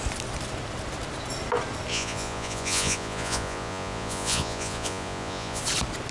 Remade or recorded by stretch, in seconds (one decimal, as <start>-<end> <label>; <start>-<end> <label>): 0.0-1.9 recorded; 1.9-5.6 remade; 5.6-6.1 recorded